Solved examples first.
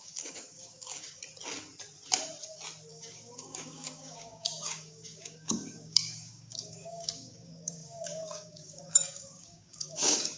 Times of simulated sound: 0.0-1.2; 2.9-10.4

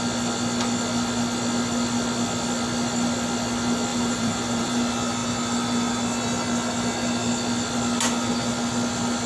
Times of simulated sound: 3.9-4.8

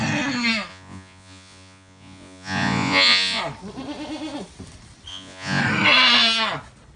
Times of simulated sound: 0.7-3.4; 5.1-5.6

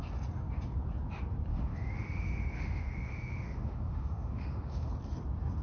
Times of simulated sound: 1.5-4.9

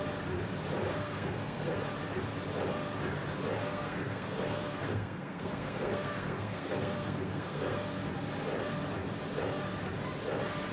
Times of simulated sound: 0.9-1.9; 3.6-8.1